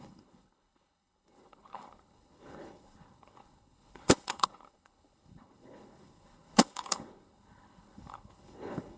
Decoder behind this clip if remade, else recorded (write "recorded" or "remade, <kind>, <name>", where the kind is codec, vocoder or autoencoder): remade, codec, HILCodec